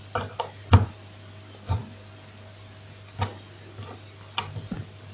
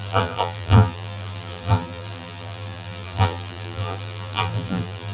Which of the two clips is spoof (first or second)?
second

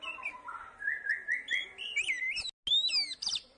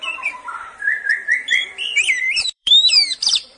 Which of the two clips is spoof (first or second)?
second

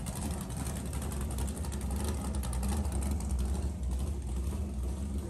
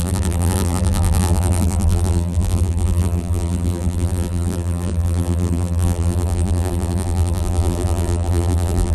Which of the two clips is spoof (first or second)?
second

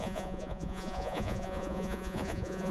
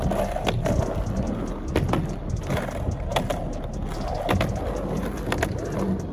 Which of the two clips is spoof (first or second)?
first